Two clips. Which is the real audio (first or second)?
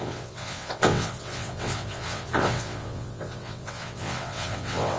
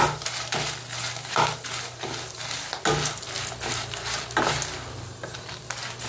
second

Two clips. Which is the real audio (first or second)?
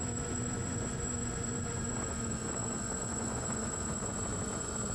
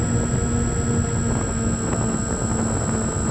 second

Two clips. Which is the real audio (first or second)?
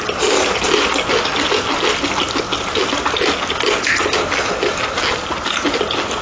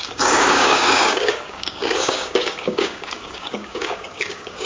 first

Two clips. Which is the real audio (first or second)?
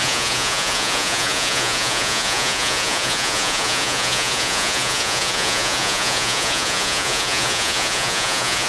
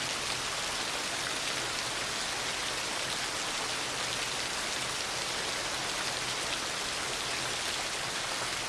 second